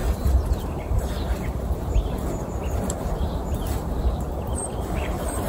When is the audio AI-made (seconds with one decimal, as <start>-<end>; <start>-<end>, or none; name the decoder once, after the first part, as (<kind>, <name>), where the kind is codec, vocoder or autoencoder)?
0.0-1.1 (vocoder, BigVGAN v2); 3.2-5.5

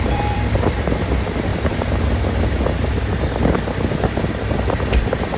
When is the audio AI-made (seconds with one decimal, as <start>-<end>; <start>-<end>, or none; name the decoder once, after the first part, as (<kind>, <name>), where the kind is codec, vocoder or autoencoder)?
0.0-1.5 (vocoder, BigVGAN v2); 4.7-5.4

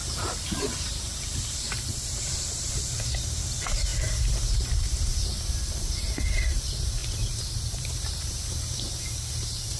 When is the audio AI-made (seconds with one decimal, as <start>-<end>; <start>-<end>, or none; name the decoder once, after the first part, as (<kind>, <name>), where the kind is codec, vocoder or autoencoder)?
0.0-7.0 (vocoder, BigVGAN v2); 7.7-9.8

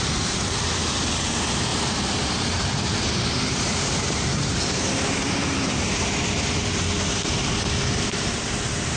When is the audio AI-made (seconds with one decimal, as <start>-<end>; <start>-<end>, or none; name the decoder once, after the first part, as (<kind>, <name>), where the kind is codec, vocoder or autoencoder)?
1.7-5.9 (vocoder, BigVGAN v2)

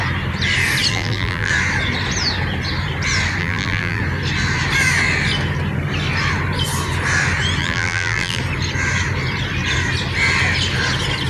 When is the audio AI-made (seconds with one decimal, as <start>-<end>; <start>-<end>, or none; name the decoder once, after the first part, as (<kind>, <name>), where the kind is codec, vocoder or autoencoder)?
0.9-1.5 (vocoder, BigVGAN v2); 3.4-4.0; 7.6-8.4